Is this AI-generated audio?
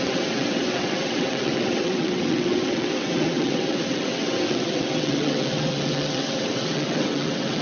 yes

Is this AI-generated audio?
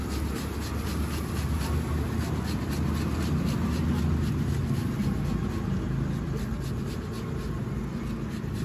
no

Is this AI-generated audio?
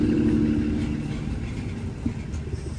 no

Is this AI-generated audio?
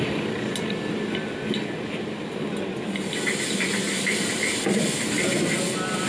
no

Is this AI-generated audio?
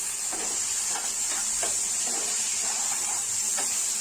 no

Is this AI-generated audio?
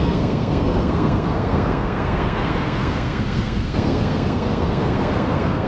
yes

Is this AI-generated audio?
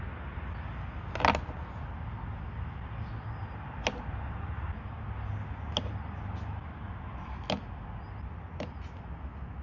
no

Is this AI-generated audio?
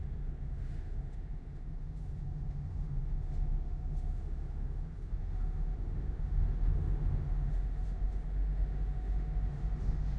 yes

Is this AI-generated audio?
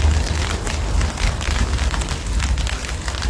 no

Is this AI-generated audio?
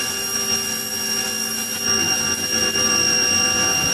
no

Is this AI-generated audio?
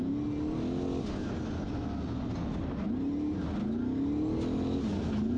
no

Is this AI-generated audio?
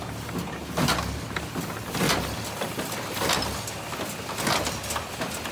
no